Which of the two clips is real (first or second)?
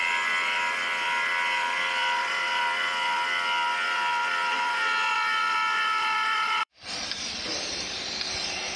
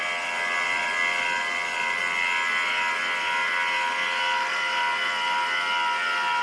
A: second